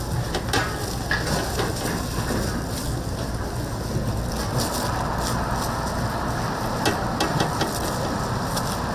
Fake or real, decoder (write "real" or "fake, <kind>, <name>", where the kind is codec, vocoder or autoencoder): real